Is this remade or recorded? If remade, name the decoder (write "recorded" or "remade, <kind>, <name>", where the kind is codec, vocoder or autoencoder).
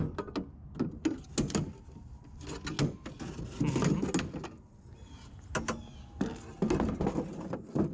recorded